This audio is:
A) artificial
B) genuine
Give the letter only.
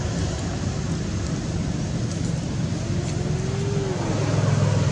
B